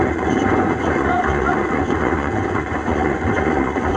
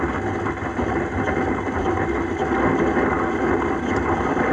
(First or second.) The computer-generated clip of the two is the first